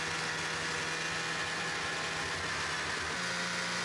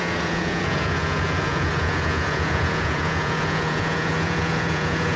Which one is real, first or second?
first